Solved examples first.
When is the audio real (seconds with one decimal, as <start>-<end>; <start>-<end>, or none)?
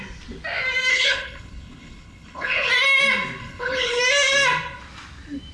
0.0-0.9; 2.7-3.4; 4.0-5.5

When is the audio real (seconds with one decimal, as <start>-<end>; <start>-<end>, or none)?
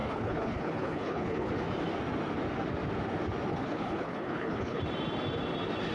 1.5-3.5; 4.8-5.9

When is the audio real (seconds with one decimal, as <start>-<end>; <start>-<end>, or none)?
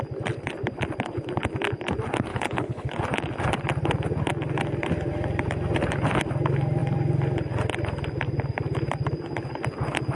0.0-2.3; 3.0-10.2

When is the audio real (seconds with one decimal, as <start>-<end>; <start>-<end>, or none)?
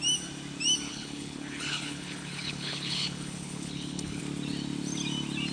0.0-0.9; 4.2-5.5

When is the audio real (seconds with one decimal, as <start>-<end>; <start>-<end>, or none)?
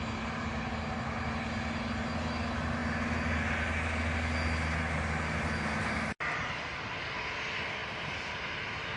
0.0-9.0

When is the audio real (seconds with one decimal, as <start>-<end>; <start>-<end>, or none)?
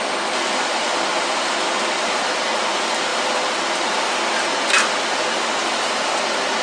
0.0-6.6